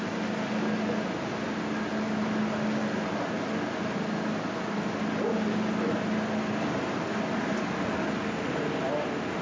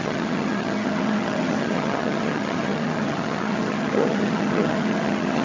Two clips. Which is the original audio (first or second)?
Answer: first